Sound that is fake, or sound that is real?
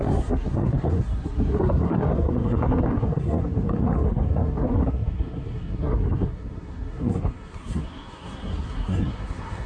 fake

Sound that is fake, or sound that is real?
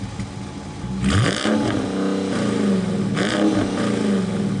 real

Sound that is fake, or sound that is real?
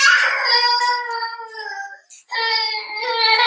real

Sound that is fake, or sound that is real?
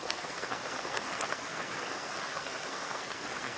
fake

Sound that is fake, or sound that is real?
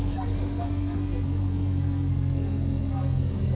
fake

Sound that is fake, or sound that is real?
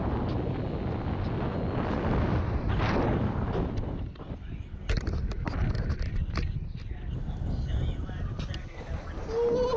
real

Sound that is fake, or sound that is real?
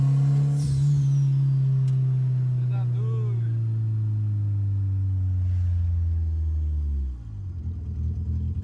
real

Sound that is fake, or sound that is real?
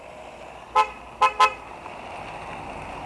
real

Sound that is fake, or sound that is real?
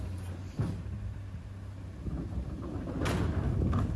real